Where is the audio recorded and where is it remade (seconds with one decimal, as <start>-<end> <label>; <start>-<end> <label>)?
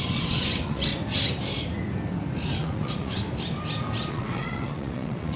0.0-0.9 remade; 0.9-2.5 recorded; 2.5-3.2 remade; 3.2-4.1 recorded; 4.1-5.4 remade